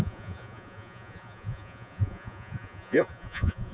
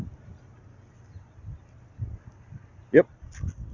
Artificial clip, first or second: first